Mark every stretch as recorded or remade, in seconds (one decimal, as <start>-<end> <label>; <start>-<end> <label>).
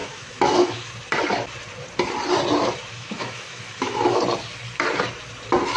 0.0-0.9 remade; 0.9-2.9 recorded; 2.9-4.2 remade; 4.2-5.8 recorded